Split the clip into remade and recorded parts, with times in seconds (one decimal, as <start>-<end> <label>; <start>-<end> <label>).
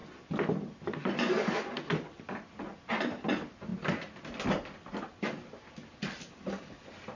0.0-2.5 remade; 2.5-7.2 recorded